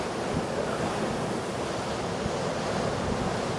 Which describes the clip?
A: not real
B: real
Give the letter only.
B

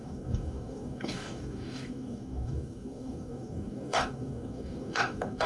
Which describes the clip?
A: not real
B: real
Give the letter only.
A